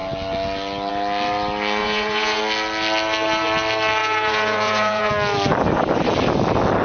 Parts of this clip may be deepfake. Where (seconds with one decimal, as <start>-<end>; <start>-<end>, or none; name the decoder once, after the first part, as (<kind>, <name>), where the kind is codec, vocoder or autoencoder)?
1.8-2.4 (vocoder, Vocos); 4.0-5.1